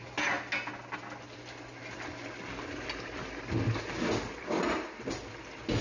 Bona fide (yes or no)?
yes